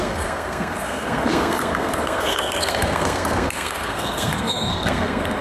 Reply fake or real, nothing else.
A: fake